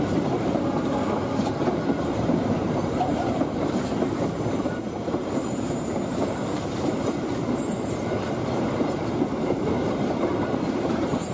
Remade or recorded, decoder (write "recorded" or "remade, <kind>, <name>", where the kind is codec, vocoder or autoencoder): remade, vocoder, BigVGAN v2